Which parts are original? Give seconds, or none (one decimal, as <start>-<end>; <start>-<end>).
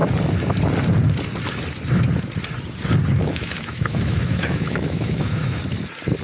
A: 0.0-3.1; 5.6-6.2